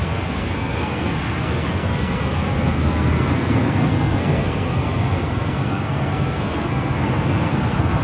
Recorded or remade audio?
remade